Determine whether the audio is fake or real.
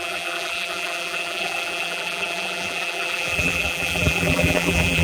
fake